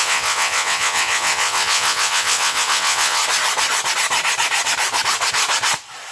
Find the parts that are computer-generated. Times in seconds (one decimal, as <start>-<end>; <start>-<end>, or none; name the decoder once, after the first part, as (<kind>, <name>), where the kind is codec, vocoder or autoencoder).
0.0-3.2 (vocoder, WaveNeXt)